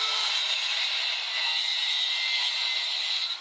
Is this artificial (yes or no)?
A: yes